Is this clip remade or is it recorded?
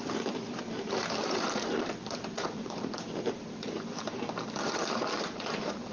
remade